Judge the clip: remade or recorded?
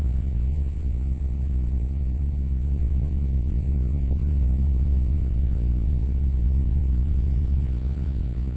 remade